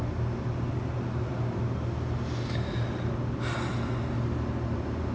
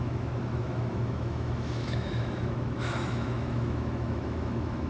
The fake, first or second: second